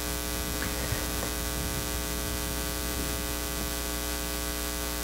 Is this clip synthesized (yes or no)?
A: no